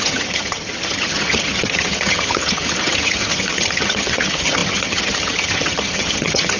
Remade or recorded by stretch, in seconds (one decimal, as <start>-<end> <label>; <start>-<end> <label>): 0.0-6.6 remade